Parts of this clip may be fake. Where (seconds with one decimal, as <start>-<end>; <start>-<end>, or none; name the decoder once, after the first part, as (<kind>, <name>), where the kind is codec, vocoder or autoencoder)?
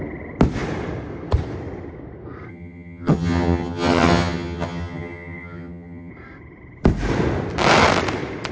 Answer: 2.5-6.1 (vocoder, HiFi-GAN)